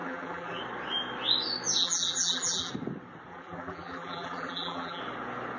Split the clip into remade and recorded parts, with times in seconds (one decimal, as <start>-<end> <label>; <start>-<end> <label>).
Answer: 0.0-0.6 remade; 0.6-1.8 recorded; 1.8-2.7 remade; 2.7-3.3 recorded; 3.3-5.0 remade; 5.0-5.6 recorded